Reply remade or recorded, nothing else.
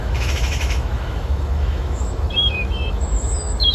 remade